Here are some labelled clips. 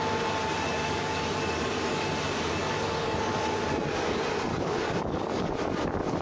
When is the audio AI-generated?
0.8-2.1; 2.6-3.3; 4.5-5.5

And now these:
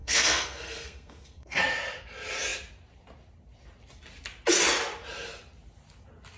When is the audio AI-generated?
0.0-1.6

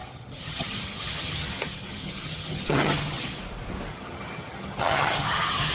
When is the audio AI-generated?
0.0-3.4; 3.9-5.7

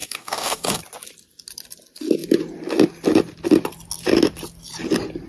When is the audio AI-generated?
0.0-0.8

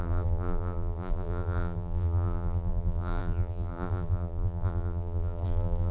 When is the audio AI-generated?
0.0-5.9